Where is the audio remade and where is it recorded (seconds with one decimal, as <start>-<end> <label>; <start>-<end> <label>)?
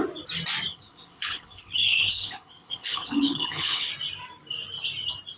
0.0-0.7 recorded; 0.7-3.9 remade; 3.9-5.4 recorded